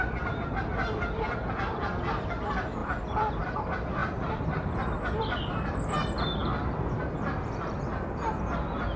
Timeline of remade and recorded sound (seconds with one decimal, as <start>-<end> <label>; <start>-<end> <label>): 0.0-2.8 recorded; 2.8-3.6 remade; 3.6-4.0 recorded; 4.0-4.7 remade; 4.7-6.4 recorded; 6.4-7.0 remade; 7.0-9.0 recorded